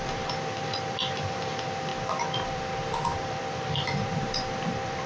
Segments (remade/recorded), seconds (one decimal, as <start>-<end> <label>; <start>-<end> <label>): 0.0-1.9 remade; 1.9-2.5 recorded; 2.5-5.1 remade